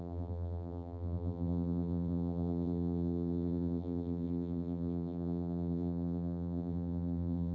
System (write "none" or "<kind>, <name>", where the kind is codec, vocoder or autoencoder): vocoder, BigVGAN v2